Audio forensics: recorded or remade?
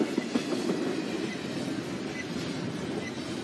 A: recorded